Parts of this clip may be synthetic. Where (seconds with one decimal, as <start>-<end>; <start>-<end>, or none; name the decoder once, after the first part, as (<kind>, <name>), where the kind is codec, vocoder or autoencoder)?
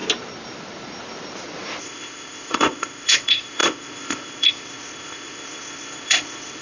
1.8-6.6 (codec, ZipCodec)